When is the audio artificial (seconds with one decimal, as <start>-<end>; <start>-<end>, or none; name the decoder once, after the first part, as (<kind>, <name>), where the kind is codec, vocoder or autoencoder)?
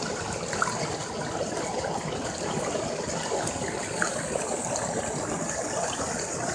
none